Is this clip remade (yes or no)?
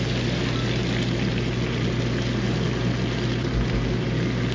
no